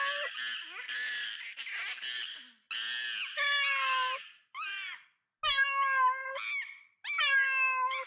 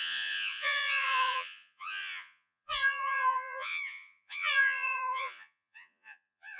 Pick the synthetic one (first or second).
second